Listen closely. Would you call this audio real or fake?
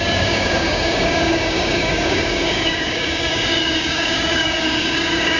fake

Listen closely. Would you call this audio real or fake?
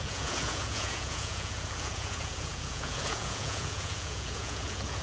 fake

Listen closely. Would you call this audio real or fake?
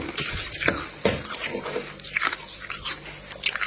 real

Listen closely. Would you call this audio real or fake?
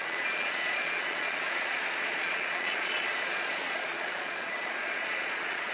fake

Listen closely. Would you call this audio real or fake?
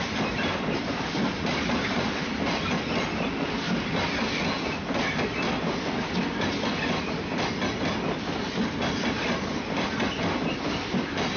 real